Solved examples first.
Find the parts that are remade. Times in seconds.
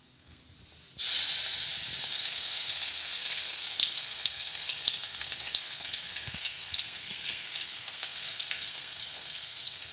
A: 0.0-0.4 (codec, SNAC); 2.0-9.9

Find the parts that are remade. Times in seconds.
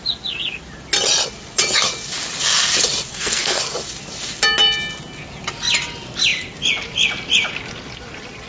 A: 3.1-3.6 (codec, SNAC)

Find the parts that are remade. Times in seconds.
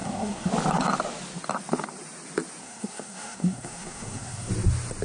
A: 0.0-0.5 (codec, SNAC); 2.6-4.5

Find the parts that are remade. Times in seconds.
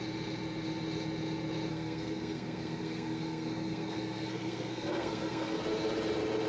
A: 1.7-5.6 (codec, SNAC)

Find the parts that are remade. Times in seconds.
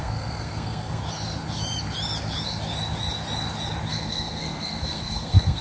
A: 0.0-1.0 (codec, SNAC); 3.9-5.6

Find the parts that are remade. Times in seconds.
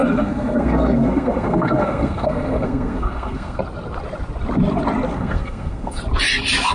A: 0.0-3.6 (codec, SNAC); 5.1-6.0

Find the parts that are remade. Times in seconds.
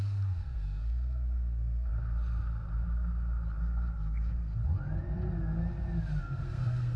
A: 0.0-1.9 (codec, SNAC); 3.6-4.6; 6.2-7.0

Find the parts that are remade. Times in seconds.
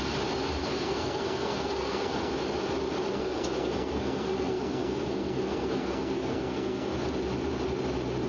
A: 0.6-2.3 (codec, SNAC); 3.1-6.9